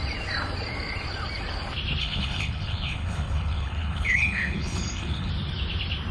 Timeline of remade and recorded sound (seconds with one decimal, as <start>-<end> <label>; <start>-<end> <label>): 0.0-2.0 recorded; 2.0-5.3 remade; 5.3-6.1 recorded